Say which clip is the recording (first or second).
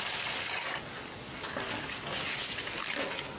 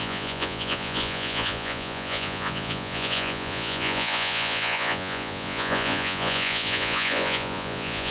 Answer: first